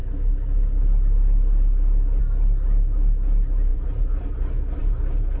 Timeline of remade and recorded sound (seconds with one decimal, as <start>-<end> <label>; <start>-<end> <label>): 0.0-3.7 recorded; 3.7-4.3 remade; 4.3-5.4 recorded